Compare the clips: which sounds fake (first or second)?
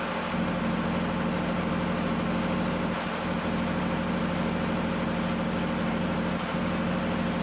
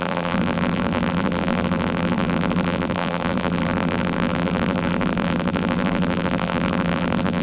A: second